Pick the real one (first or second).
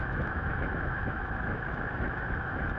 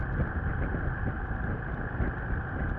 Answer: second